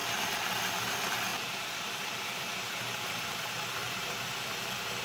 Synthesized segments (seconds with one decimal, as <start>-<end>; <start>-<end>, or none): 1.3-4.3